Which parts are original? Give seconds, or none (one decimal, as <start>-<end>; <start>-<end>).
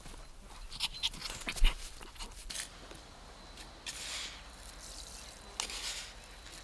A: 0.0-6.6